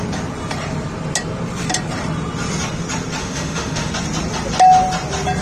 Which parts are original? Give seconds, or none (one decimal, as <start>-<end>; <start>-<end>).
0.0-3.2; 3.9-5.4